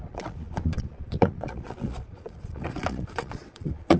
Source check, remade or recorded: remade